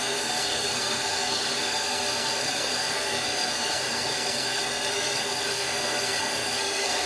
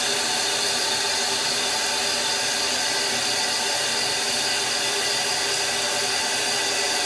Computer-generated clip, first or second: first